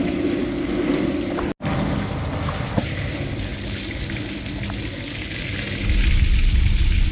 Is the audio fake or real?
real